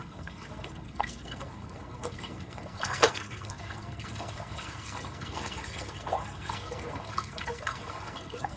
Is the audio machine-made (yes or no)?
yes